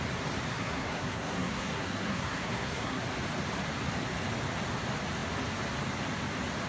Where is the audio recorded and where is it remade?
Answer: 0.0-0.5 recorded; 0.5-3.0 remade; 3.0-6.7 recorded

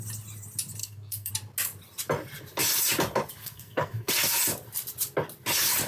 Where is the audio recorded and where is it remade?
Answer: 0.0-0.8 recorded; 0.8-1.3 remade; 1.3-3.4 recorded; 3.4-4.1 remade; 4.1-5.9 recorded

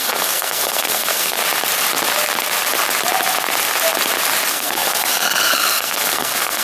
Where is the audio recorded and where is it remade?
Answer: 0.0-1.4 remade; 1.4-4.5 recorded; 4.5-6.6 remade

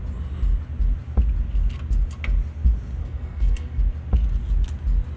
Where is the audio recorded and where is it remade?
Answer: 0.0-3.0 recorded; 3.0-3.8 remade; 3.8-5.2 recorded